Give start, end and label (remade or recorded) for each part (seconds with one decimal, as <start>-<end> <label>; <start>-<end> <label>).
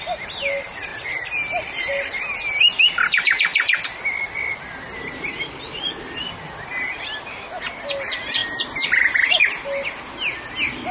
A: 0.0-10.9 recorded